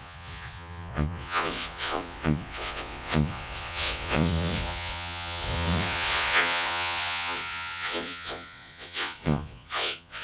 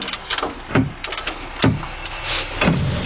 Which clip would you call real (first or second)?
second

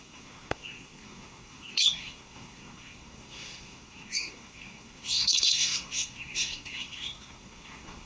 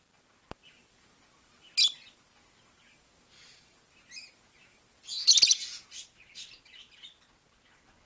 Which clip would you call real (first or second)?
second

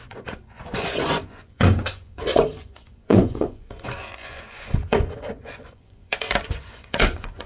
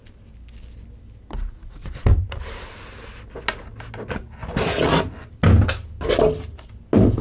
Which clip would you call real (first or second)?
second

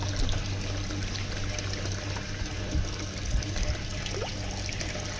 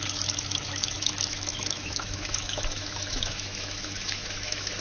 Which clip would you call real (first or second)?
first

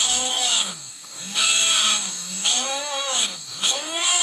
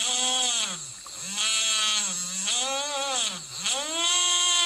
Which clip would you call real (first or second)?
second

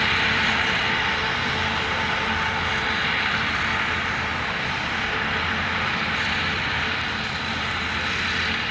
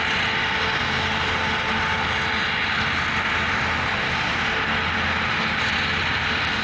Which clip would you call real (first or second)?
second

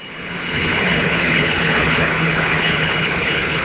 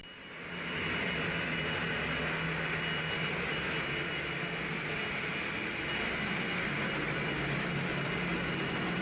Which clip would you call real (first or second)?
second